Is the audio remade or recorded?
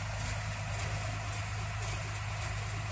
recorded